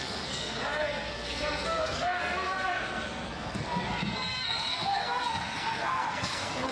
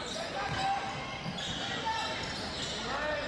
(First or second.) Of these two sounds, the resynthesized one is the first